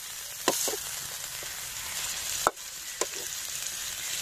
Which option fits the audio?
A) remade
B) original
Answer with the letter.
B